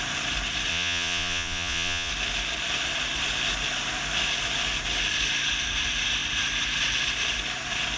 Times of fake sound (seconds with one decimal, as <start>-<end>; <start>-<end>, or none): 0.7-2.1